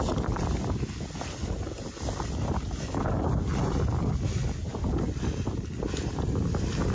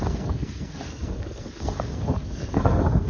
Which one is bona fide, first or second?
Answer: first